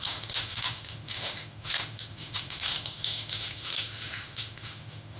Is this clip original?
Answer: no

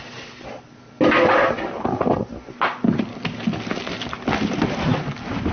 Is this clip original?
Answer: yes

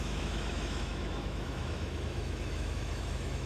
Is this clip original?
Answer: no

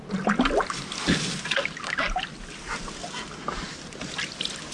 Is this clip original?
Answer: yes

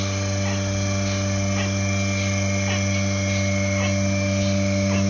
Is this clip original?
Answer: yes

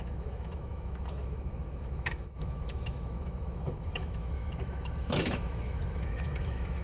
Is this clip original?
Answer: no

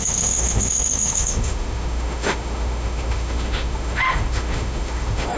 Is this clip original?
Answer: no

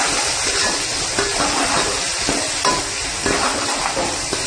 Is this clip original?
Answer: yes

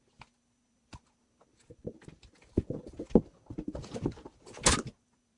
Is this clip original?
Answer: yes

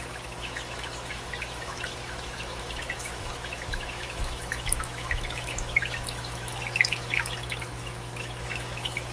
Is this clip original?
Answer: no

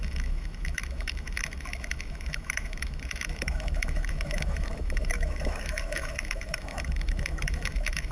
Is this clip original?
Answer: no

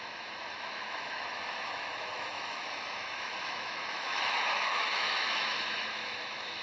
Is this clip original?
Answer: no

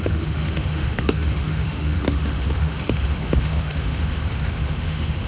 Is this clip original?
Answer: no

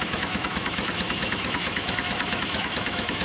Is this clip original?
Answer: no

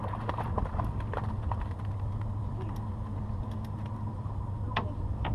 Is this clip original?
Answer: yes